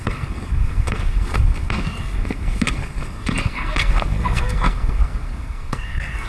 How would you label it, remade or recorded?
remade